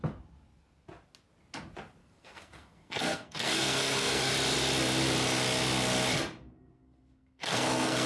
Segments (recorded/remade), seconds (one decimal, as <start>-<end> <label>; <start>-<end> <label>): 0.0-2.0 recorded; 2.0-4.3 remade; 4.3-6.5 recorded; 6.5-8.1 remade